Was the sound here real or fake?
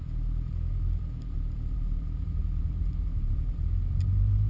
fake